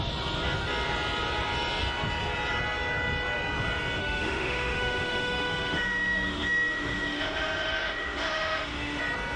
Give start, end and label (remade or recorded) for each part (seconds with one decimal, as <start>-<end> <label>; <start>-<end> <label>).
0.0-4.0 recorded; 4.0-9.0 remade; 9.0-9.4 recorded